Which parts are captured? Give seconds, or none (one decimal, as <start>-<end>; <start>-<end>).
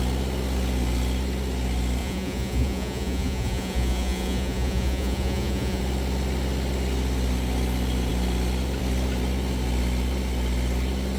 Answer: 0.0-2.0; 5.8-11.2